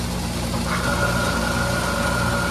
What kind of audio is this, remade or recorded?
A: recorded